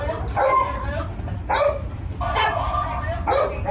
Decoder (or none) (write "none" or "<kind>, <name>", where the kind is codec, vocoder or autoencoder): none